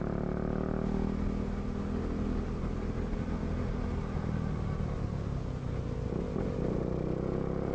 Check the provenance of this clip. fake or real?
real